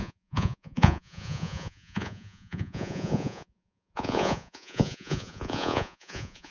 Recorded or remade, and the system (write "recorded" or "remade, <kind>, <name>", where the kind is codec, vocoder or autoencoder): remade, vocoder, Vocos